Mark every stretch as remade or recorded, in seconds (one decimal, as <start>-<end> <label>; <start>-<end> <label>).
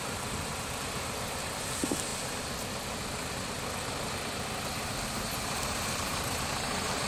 0.0-2.1 remade; 2.1-5.2 recorded; 5.2-7.1 remade